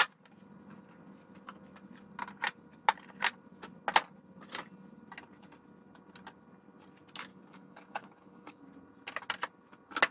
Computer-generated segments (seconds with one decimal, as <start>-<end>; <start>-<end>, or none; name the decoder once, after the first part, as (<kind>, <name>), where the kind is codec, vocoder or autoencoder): 7.3-8.6 (codec, DAC)